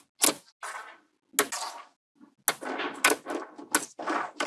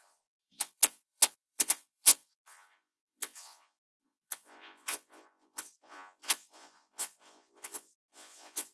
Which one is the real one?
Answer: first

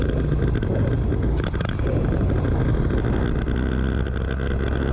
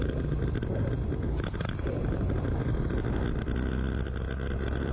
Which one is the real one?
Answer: first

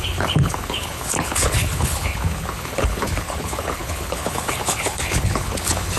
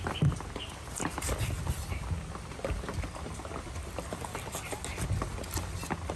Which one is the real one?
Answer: second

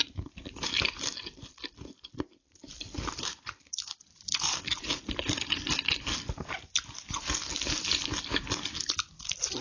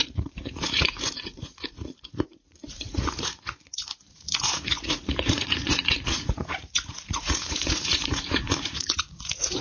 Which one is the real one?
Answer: first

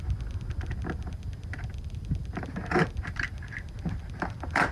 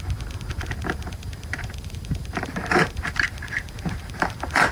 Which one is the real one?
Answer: first